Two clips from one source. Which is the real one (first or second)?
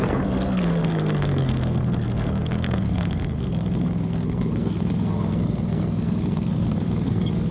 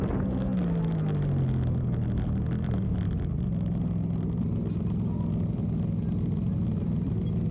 second